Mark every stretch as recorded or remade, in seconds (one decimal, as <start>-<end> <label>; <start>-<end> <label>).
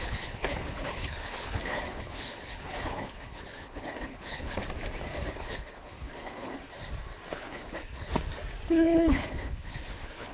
0.0-4.6 remade; 4.6-5.3 recorded; 5.3-6.5 remade; 6.5-7.3 recorded; 7.3-8.1 remade; 8.1-8.7 recorded; 8.7-10.3 remade